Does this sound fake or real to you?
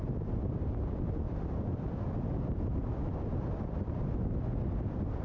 real